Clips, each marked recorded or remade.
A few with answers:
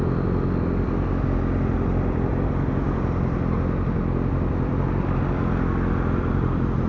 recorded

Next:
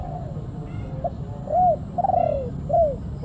recorded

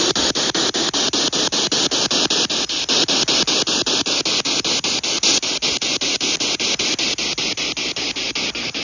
recorded